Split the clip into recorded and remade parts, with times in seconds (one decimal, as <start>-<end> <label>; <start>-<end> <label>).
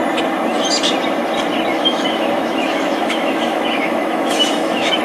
0.0-1.7 recorded; 1.7-5.0 remade